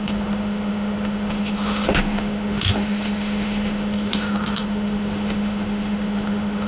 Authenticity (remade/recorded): remade